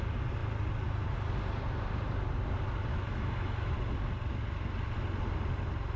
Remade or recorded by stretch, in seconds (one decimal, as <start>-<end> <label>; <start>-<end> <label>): 0.0-2.9 recorded; 2.9-3.7 remade; 3.7-6.0 recorded